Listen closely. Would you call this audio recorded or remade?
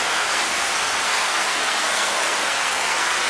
remade